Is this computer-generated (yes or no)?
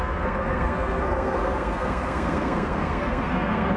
yes